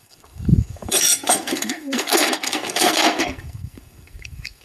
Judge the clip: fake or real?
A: fake